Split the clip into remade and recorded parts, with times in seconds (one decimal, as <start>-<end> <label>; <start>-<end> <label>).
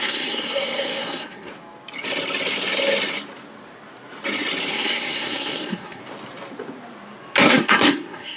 0.0-1.5 remade; 1.5-4.7 recorded; 4.7-6.0 remade; 6.0-7.5 recorded; 7.5-8.4 remade